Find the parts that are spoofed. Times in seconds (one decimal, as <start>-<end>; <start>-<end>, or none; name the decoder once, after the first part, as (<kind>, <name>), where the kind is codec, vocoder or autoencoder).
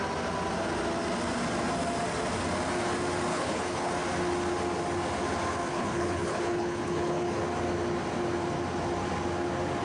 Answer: 3.3-3.9 (codec, HILCodec); 5.7-7.4